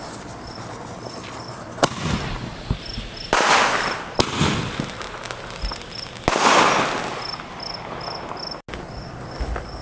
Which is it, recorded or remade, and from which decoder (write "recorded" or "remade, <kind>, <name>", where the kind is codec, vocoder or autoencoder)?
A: recorded